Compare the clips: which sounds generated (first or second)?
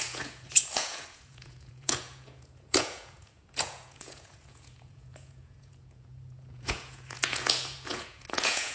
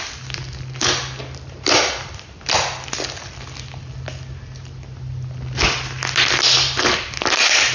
first